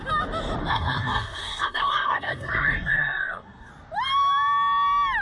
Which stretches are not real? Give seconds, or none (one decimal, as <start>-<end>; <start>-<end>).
0.6-3.7